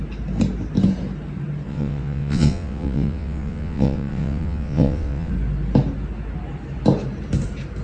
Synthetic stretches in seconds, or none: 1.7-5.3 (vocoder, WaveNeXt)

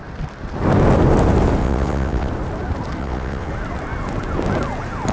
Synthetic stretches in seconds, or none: 1.6-2.3 (vocoder, WaveNeXt); 3.0-3.5

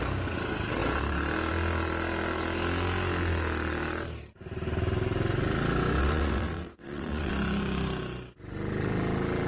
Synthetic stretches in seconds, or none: 6.0-7.3 (vocoder, WaveNeXt)

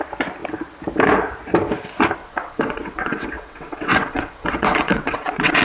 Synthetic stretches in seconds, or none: 2.2-5.6 (vocoder, WaveNeXt)

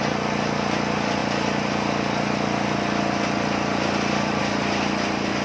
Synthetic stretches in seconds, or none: none

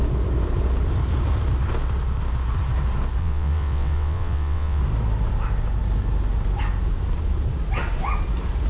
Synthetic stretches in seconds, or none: 3.2-4.8 (vocoder, WaveNeXt)